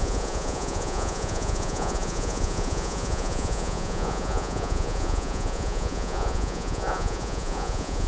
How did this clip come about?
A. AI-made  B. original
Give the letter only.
A